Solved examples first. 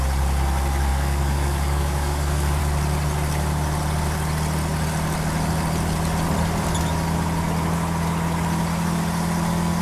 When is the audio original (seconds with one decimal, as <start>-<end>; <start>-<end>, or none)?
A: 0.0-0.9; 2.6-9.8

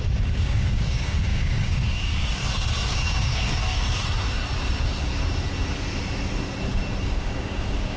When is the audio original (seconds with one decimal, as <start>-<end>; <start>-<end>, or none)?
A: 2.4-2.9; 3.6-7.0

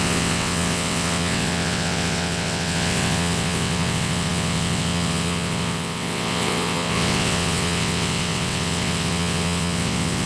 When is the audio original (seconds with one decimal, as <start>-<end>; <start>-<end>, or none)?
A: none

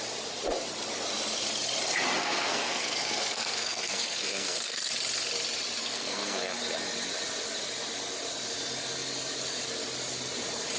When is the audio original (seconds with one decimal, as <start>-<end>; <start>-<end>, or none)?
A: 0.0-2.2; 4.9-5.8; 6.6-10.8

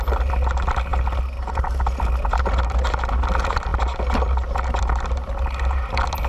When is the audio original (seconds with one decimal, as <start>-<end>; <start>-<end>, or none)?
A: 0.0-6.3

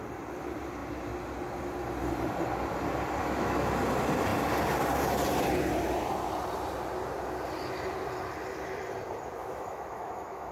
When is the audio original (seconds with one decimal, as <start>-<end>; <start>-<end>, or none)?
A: 0.0-3.2; 3.7-9.4

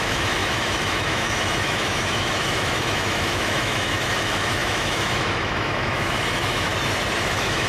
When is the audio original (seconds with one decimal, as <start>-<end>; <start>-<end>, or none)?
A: 6.7-7.2